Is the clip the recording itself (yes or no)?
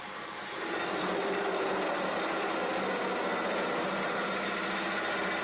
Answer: yes